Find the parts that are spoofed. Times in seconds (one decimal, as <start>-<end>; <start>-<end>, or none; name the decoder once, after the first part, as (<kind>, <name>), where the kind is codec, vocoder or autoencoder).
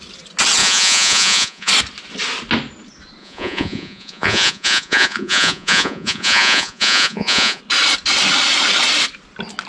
0.6-1.7 (vocoder, Vocos); 3.2-7.6